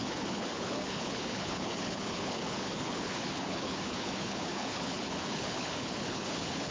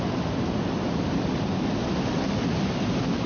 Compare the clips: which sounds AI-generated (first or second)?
first